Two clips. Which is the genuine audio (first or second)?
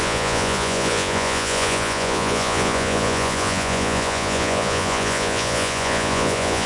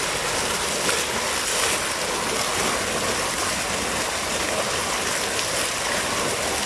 second